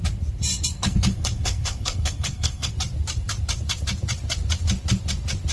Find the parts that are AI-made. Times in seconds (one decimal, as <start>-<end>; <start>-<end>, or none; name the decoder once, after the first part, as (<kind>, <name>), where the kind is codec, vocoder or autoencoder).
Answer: 0.7-2.7 (codec, SNAC)